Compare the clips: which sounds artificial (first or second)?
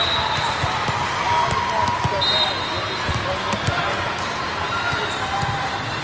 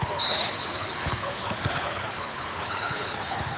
second